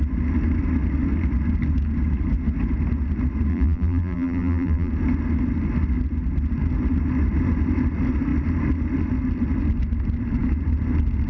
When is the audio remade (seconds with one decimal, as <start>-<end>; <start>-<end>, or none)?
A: 3.5-4.9